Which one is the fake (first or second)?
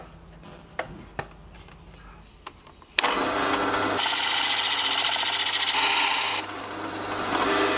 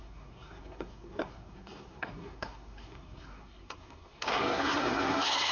second